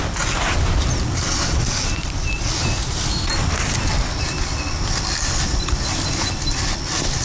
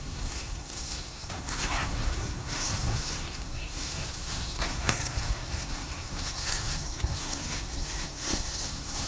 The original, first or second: first